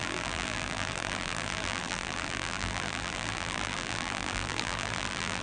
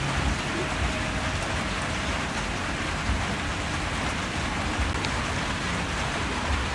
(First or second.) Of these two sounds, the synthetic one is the first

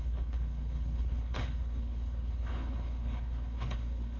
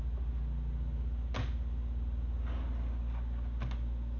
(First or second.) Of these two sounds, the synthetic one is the first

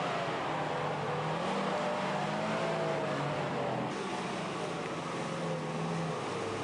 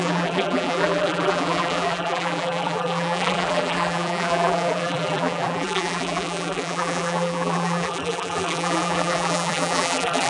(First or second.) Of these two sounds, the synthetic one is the second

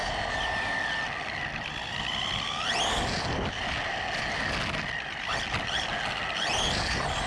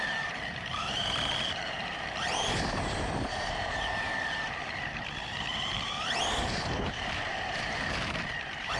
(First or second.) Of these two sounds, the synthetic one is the second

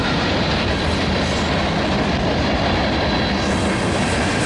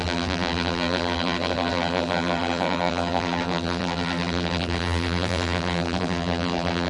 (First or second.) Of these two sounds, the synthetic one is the second